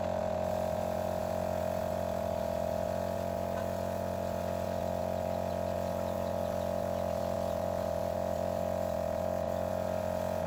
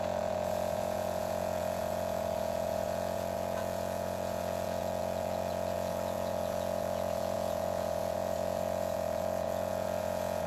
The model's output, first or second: second